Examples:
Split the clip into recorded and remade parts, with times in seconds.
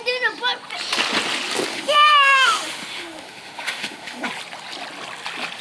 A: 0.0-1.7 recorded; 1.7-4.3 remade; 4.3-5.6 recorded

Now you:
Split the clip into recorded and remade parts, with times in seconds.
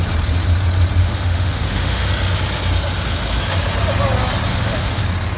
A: 0.0-1.0 recorded; 1.0-2.1 remade; 2.1-4.5 recorded; 4.5-5.0 remade; 5.0-5.4 recorded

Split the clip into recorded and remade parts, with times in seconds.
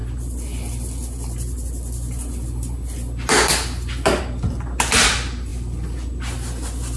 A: 0.0-7.0 recorded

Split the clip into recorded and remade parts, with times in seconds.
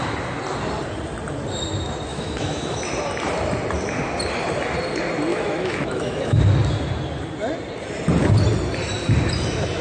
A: 0.0-2.1 recorded; 2.1-2.9 remade; 2.9-5.3 recorded; 5.3-6.4 remade; 6.4-9.8 recorded